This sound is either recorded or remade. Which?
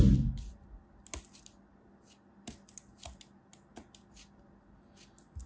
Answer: recorded